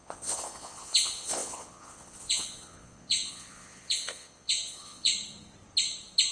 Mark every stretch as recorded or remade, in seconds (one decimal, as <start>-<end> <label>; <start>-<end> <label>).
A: 0.0-5.1 remade; 5.1-6.3 recorded